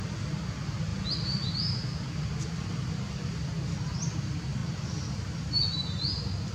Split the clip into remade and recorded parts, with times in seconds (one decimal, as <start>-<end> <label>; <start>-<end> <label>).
0.0-6.5 recorded